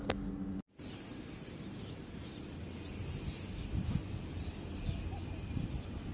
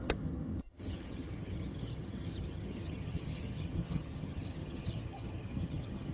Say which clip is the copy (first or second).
second